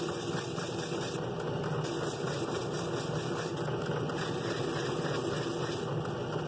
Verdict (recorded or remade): recorded